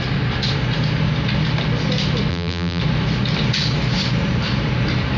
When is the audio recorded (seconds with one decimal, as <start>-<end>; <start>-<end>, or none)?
0.0-2.3; 2.8-5.2

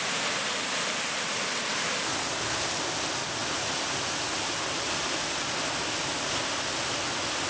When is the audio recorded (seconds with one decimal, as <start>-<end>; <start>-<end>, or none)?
0.0-7.5

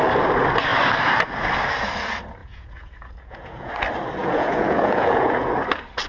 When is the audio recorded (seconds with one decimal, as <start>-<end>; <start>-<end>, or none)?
0.0-2.4; 3.7-4.2; 5.5-6.1

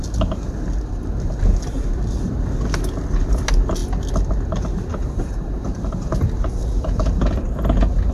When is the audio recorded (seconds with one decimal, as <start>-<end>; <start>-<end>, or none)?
0.0-4.9; 7.2-8.1

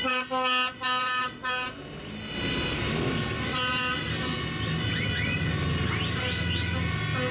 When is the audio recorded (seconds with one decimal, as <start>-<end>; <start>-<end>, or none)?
0.0-7.3

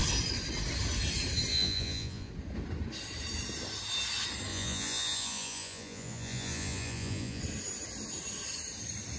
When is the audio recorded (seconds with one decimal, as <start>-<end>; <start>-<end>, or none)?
0.0-1.5; 2.3-4.5; 7.4-9.2

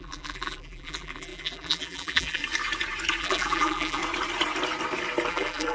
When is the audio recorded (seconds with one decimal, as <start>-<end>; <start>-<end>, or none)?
2.4-3.2; 4.0-5.3

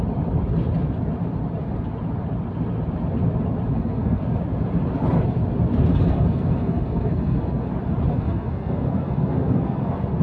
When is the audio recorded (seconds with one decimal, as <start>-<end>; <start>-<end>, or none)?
0.0-3.7; 4.2-5.9; 7.7-8.1